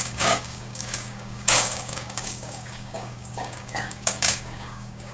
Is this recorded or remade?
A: remade